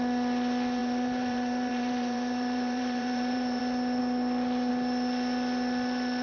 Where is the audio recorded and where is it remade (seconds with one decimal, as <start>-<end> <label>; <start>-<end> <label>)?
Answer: 0.0-0.8 recorded; 0.8-3.6 remade; 3.6-6.2 recorded